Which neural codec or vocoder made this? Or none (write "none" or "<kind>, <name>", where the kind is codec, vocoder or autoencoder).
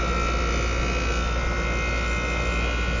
none